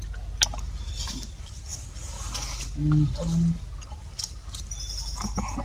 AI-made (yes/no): no